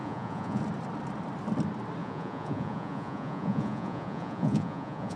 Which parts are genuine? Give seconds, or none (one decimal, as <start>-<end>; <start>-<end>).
0.6-2.0

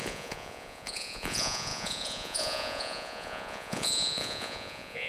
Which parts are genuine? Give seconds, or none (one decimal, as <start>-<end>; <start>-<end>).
none

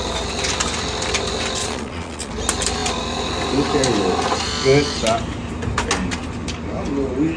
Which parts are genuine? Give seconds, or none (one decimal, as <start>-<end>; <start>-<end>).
0.0-1.6; 2.3-7.4

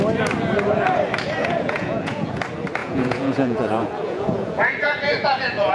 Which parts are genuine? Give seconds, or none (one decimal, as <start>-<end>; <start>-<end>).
0.0-1.4; 2.4-2.8

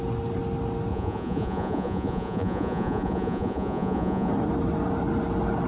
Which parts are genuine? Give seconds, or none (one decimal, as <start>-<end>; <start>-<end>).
0.0-0.9; 4.3-5.7

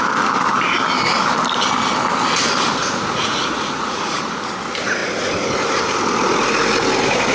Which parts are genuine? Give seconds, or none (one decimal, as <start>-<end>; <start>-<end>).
0.0-2.8; 4.4-7.3

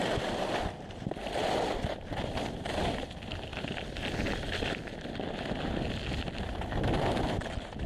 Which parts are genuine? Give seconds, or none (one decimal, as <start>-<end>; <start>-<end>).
0.0-7.9